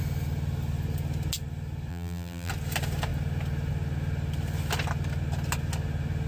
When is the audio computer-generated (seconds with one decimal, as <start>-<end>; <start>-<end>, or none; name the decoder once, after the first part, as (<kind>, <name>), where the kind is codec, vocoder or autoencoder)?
1.9-2.5 (vocoder, BigVGAN v2)